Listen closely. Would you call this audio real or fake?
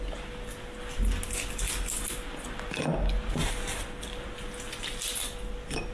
real